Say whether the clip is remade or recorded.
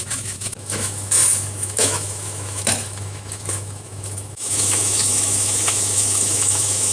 remade